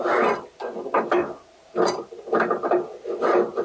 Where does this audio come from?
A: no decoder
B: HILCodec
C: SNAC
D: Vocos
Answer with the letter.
A